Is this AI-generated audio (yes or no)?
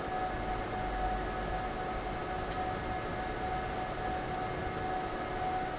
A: no